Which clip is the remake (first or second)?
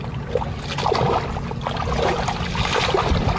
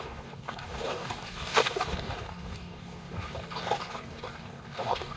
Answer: second